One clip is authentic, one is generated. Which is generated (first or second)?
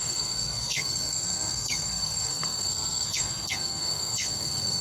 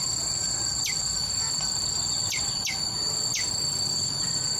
first